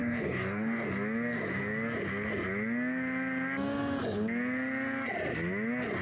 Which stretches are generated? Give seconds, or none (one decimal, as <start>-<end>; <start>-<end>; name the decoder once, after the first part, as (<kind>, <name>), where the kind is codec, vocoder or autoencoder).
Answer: 0.0-0.9 (codec, DAC)